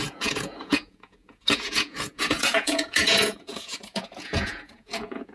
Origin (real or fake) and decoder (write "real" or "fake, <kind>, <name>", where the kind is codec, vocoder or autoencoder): fake, vocoder, Vocos